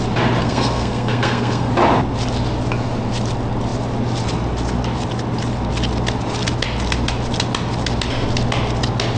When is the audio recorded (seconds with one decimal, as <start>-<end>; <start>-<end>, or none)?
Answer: 0.0-0.4; 1.7-9.2